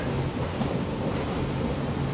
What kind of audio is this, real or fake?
real